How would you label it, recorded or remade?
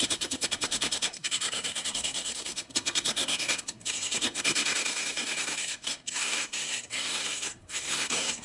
remade